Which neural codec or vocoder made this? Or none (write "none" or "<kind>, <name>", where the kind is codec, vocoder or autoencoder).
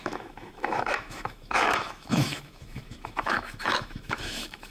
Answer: autoencoder, DAC-VAE